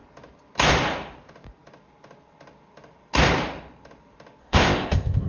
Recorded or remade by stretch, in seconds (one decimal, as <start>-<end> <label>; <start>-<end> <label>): 0.0-4.4 recorded; 4.4-5.3 remade